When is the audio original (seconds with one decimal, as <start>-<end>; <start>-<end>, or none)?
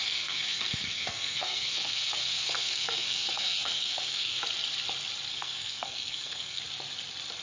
4.4-5.3; 6.6-7.4